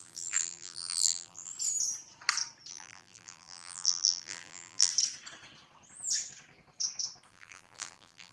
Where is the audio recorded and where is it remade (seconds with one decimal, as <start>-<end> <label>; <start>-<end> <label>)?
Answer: 0.0-1.5 remade; 1.5-2.7 recorded; 2.7-4.9 remade; 4.9-7.3 recorded; 7.3-8.3 remade